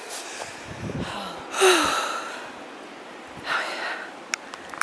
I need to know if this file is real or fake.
real